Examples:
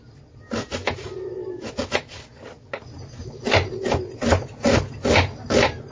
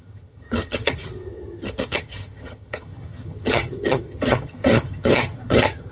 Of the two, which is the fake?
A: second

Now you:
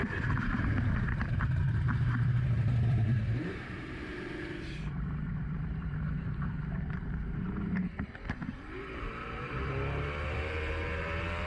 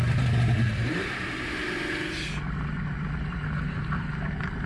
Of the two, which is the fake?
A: first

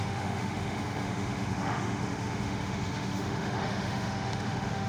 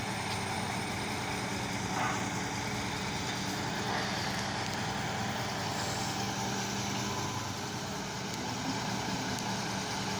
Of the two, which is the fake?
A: first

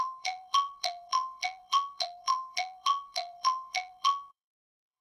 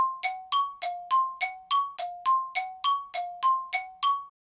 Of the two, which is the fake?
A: first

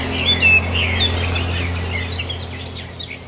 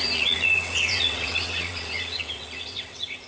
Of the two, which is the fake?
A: second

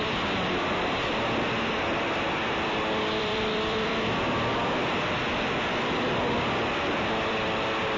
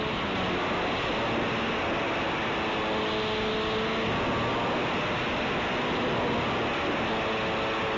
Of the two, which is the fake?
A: first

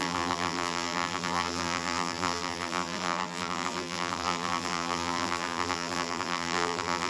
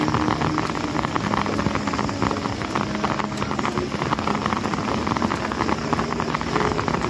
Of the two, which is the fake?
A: first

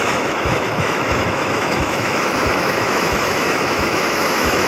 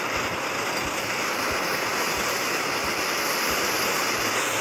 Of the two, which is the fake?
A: first